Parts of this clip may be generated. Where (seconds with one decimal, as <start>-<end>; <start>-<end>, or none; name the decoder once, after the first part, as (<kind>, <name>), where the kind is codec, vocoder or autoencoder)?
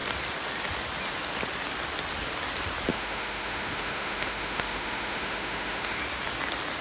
2.9-6.0 (autoencoder, DAC-VAE)